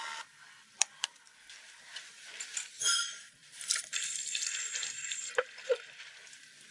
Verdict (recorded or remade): remade